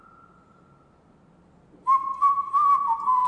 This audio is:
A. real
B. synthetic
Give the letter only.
A